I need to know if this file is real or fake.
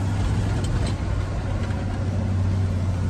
real